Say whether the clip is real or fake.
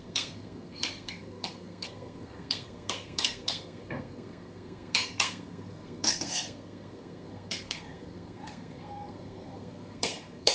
fake